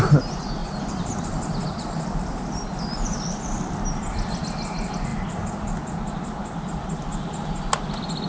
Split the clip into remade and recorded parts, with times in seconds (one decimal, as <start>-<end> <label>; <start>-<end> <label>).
0.0-0.6 recorded; 0.6-4.4 remade; 4.4-8.3 recorded